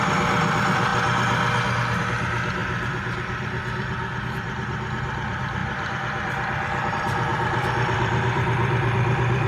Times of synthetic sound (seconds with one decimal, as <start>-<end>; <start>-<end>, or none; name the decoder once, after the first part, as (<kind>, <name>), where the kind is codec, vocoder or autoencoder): 0.0-0.9 (vocoder, BigVGAN v2); 2.0-2.6; 4.3-9.5